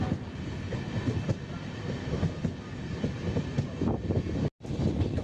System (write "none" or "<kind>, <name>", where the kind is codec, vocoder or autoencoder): none